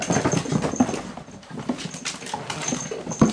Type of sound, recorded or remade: recorded